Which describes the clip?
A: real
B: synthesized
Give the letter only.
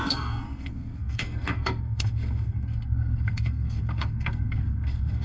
B